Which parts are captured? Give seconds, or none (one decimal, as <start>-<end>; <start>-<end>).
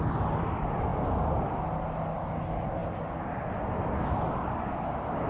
0.0-5.3